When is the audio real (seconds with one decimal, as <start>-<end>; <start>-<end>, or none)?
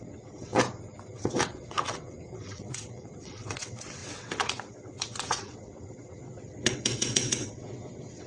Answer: 0.5-1.1